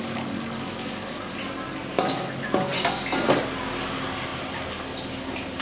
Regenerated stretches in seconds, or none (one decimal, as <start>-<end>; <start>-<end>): none